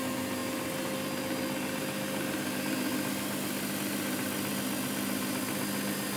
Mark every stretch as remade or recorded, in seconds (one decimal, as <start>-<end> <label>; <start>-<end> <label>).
0.0-6.2 recorded